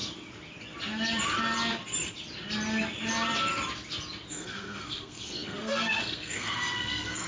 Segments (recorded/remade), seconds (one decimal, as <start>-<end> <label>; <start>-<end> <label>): 0.0-4.3 recorded; 4.3-7.3 remade